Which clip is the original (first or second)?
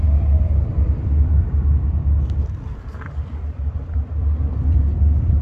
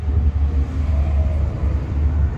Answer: second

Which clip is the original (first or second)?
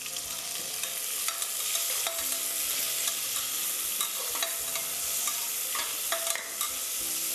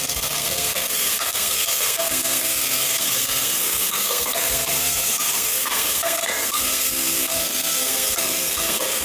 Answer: first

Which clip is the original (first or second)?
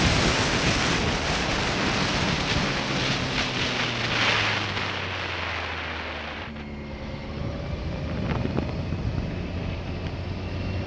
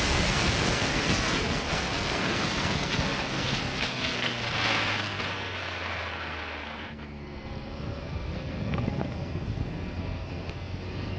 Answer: first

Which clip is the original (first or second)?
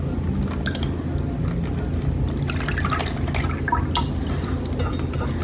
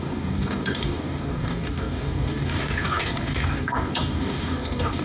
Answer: first